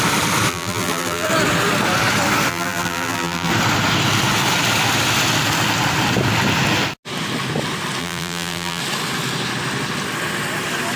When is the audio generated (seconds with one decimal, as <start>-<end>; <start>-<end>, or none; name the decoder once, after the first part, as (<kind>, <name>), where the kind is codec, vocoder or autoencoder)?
0.5-1.3 (vocoder, BigVGAN v2); 2.5-3.5; 8.0-8.8